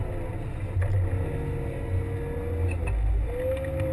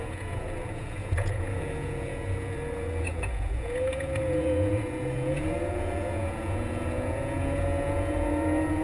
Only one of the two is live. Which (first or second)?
first